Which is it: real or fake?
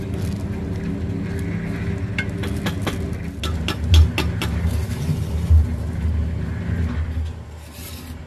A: real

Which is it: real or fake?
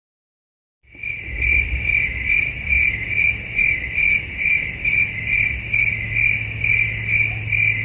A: real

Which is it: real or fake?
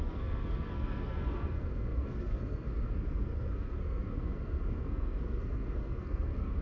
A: fake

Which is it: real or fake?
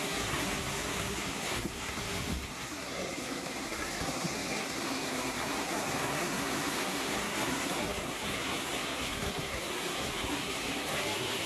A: fake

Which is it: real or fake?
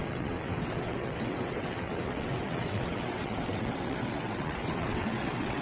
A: fake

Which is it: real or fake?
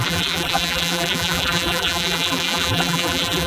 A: fake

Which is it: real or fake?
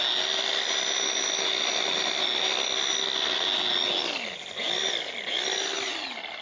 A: real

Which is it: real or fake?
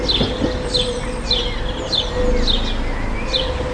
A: real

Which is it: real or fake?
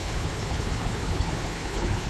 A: fake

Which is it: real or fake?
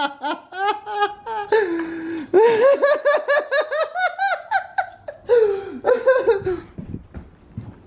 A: real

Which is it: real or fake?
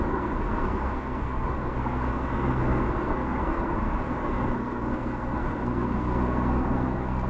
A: fake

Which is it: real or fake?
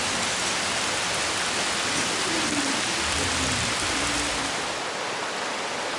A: real